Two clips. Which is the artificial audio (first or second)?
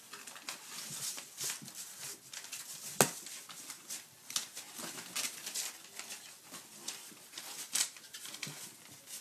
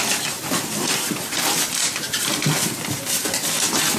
second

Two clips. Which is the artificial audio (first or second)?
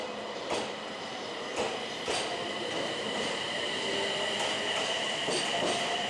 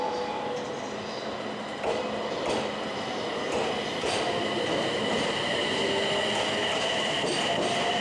first